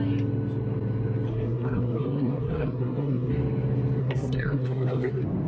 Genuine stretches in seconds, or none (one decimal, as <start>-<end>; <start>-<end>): 0.0-1.3; 3.3-4.0; 5.1-5.5